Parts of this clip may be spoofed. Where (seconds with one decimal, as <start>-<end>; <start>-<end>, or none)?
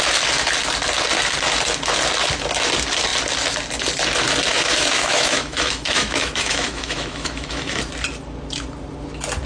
4.5-7.8